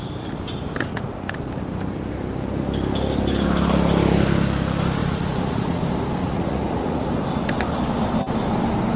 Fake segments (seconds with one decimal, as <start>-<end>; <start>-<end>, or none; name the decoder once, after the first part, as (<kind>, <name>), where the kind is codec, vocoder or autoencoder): 0.9-1.4 (vocoder, Vocos); 5.0-5.8; 6.2-7.1